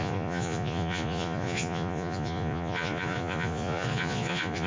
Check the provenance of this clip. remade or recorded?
remade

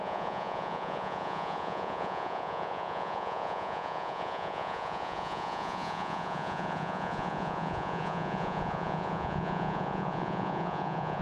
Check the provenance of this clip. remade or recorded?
remade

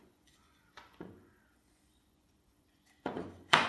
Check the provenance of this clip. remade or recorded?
remade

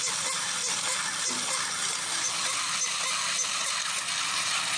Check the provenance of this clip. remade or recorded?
recorded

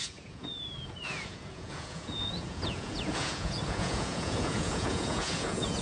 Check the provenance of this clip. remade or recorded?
remade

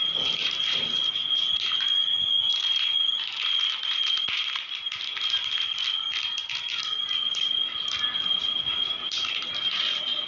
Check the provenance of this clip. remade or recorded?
recorded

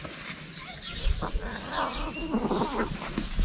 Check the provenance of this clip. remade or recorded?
recorded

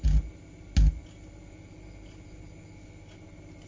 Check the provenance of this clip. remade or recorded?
recorded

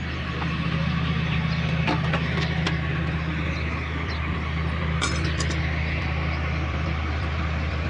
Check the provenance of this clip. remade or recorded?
recorded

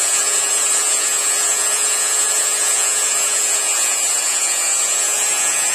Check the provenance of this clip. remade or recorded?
remade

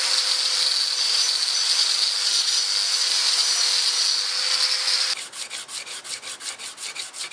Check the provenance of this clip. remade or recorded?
recorded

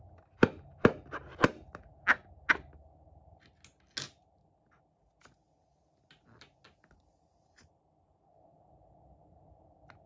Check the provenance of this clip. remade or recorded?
recorded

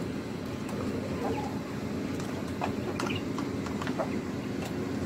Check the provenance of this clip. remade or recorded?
recorded